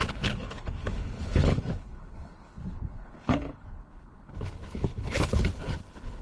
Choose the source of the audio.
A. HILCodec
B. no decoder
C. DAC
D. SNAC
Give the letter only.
A